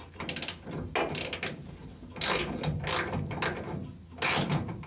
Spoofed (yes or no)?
no